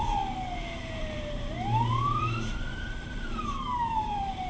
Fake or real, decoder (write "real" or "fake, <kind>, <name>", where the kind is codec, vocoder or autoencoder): fake, vocoder, BigVGAN v2